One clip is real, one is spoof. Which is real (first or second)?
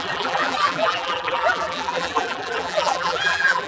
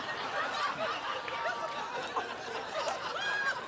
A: second